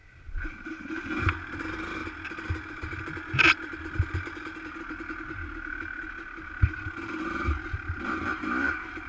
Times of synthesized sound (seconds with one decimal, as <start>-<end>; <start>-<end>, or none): 0.7-9.1